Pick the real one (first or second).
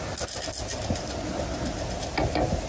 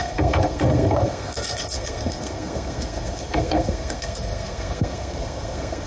first